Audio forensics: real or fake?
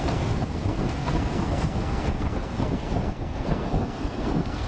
fake